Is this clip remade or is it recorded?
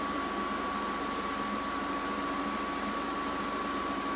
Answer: recorded